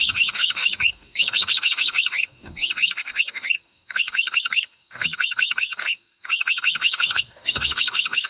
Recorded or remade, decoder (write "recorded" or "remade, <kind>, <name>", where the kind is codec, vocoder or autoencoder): remade, codec, DAC